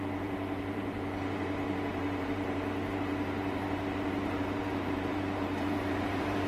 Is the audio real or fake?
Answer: fake